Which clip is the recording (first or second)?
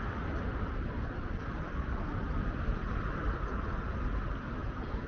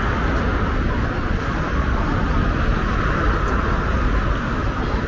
second